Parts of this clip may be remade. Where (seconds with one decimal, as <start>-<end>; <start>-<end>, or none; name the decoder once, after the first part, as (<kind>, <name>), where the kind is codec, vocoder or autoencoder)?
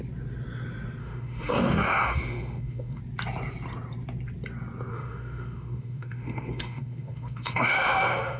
1.0-3.0 (autoencoder, DAC-VAE); 4.9-8.4